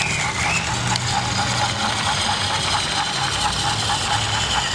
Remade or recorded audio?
recorded